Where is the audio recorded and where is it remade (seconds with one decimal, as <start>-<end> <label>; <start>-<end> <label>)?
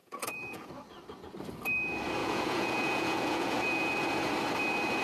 0.0-0.7 remade; 0.7-2.2 recorded; 2.2-3.9 remade; 3.9-5.0 recorded